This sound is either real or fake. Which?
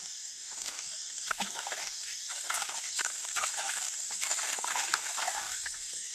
fake